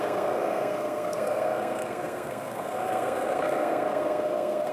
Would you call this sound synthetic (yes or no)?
yes